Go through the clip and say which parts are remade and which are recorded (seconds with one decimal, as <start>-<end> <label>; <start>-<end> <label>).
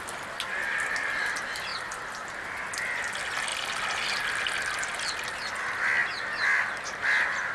0.0-7.5 recorded